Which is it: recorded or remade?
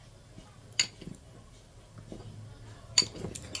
recorded